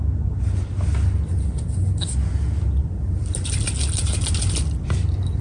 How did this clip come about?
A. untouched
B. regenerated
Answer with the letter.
A